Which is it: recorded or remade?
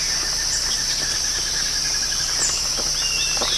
recorded